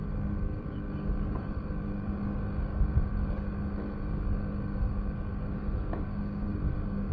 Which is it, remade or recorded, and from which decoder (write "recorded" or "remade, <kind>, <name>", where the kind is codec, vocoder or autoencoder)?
remade, codec, DAC